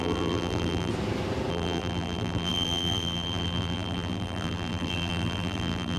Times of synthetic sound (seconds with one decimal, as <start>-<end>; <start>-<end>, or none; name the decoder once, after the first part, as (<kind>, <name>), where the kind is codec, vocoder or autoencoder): 0.0-0.9 (vocoder, BigVGAN v2); 1.5-6.0

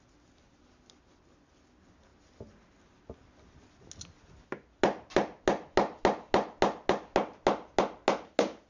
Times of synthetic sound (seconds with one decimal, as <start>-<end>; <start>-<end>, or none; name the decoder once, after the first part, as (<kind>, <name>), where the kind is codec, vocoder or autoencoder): none

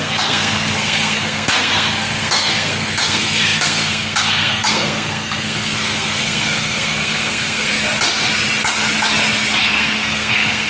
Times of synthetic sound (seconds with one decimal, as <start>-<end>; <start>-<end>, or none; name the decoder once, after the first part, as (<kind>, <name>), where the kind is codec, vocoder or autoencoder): 0.0-7.7 (codec, SNAC); 9.6-10.7

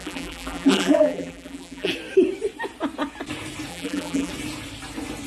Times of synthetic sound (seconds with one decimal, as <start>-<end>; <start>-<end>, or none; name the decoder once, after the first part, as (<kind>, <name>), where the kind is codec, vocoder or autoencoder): 0.0-1.9 (vocoder, BigVGAN v2); 3.7-4.3

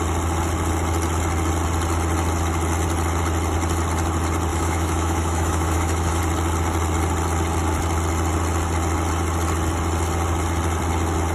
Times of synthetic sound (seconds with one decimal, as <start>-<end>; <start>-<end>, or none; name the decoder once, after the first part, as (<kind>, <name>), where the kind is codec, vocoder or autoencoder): 4.5-6.2 (autoencoder, DAC-VAE)